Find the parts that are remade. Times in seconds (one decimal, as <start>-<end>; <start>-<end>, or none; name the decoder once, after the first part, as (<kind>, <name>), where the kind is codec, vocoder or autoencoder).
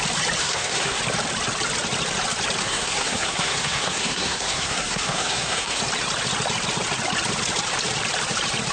0.4-1.0 (codec, SNAC); 2.6-5.8